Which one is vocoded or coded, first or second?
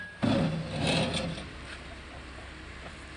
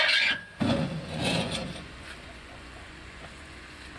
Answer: second